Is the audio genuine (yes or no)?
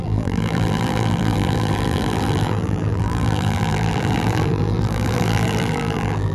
no